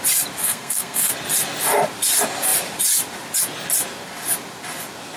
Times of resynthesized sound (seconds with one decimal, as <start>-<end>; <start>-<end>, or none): 0.4-1.1